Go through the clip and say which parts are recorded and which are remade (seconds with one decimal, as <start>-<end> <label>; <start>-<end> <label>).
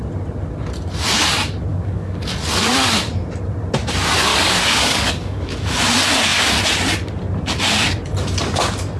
0.0-1.7 recorded; 1.7-2.3 remade; 2.3-4.3 recorded; 4.3-5.7 remade; 5.7-9.0 recorded